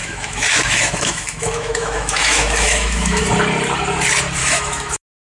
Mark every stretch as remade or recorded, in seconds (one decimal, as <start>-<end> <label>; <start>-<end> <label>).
0.0-3.2 remade; 3.2-4.4 recorded; 4.4-5.0 remade; 5.0-5.4 recorded